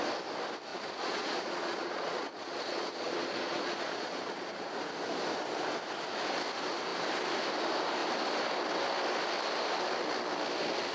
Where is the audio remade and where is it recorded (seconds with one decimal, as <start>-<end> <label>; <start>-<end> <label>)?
0.0-0.7 recorded; 0.7-4.7 remade; 4.7-10.9 recorded